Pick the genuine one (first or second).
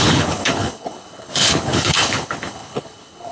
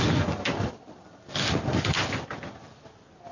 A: second